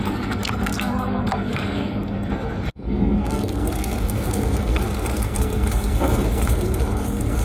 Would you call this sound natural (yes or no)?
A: no